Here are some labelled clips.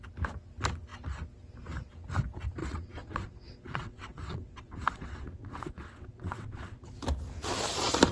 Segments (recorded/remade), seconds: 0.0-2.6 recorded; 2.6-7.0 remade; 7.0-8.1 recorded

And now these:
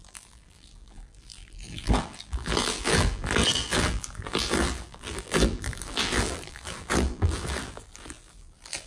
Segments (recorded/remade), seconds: 0.0-8.9 remade

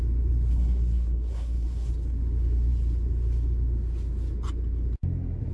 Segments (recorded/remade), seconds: 0.0-0.5 recorded; 0.5-1.9 remade; 1.9-5.5 recorded

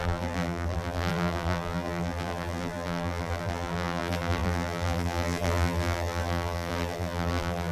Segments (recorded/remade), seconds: 0.0-7.7 remade